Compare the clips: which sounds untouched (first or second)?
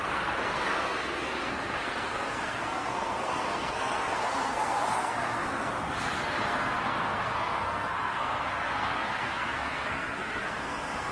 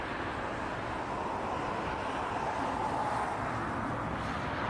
second